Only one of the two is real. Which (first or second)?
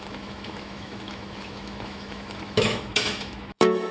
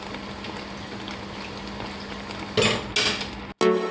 second